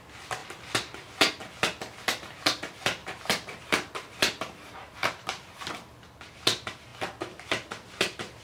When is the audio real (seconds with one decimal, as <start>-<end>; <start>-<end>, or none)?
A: 0.0-3.0; 3.6-5.0; 5.7-8.4